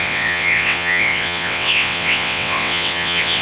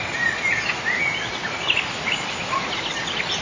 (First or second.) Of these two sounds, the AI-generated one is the first